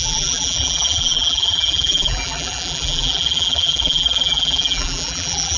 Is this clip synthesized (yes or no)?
yes